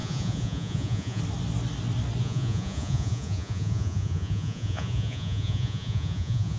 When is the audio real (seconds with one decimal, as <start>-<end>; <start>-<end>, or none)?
1.2-2.2